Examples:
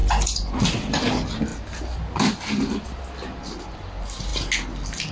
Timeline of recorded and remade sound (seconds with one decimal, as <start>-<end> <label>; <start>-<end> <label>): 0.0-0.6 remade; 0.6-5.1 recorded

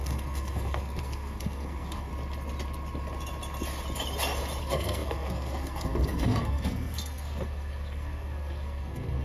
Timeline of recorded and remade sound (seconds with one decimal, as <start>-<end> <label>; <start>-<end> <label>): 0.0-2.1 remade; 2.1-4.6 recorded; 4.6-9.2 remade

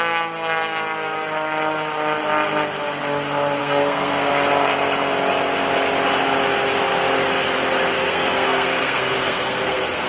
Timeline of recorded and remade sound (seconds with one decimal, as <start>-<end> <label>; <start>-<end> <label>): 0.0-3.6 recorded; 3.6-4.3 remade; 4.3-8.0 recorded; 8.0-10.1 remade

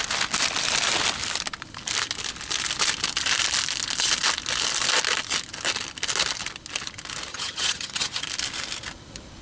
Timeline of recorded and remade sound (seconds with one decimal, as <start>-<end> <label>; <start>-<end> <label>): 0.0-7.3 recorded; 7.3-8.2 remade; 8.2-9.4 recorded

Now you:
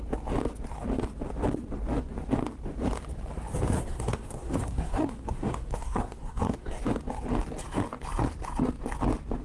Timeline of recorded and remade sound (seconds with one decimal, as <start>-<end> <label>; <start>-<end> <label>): 0.0-3.8 recorded; 3.8-6.8 remade; 6.8-9.4 recorded

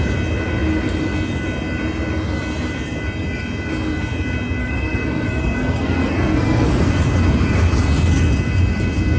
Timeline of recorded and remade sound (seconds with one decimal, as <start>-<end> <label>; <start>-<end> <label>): 0.0-4.6 recorded; 4.6-6.9 remade; 6.9-9.2 recorded